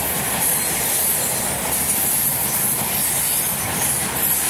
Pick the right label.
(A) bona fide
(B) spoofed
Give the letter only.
A